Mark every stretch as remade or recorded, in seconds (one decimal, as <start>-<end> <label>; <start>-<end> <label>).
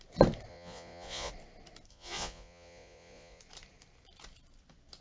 0.0-0.5 recorded; 0.5-1.3 remade; 1.3-1.9 recorded; 1.9-3.4 remade; 3.4-5.0 recorded